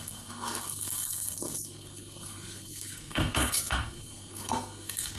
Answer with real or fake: fake